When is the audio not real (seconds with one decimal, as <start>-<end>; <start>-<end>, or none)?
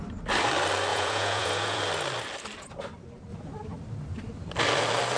0.9-1.8